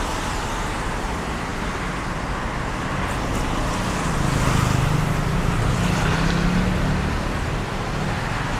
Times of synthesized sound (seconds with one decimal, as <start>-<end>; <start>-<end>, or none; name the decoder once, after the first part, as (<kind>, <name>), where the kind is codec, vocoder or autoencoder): none